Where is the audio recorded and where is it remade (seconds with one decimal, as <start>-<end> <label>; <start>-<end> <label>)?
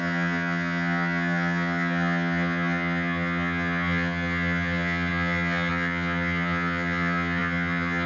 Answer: 0.0-8.1 remade